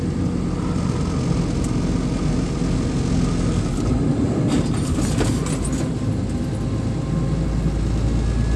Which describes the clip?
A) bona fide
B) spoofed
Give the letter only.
A